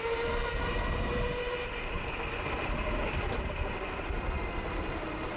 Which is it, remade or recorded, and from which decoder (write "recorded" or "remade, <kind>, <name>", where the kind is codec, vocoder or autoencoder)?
recorded